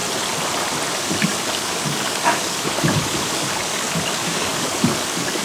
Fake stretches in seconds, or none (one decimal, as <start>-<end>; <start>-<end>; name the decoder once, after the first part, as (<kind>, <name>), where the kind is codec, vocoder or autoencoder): 0.9-5.4 (codec, DAC)